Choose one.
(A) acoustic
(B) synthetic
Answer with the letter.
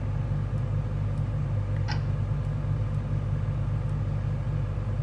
A